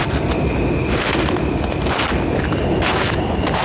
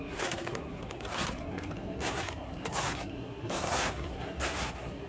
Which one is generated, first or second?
second